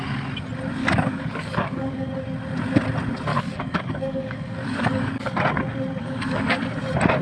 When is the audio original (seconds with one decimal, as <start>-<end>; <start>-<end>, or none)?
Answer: 0.0-0.8; 2.1-3.3; 5.4-6.0; 6.6-7.2